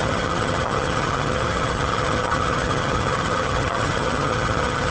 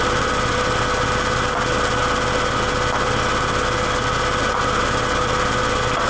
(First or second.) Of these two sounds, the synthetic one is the first